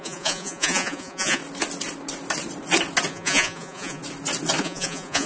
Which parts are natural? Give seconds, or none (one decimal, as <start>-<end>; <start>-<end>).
1.4-3.1; 4.0-4.6